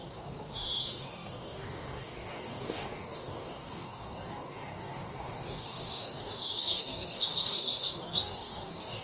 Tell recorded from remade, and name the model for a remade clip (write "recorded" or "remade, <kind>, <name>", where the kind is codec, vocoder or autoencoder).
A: remade, codec, DAC